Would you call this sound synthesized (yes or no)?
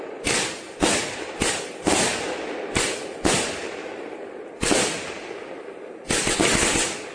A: no